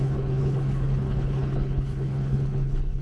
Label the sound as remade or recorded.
remade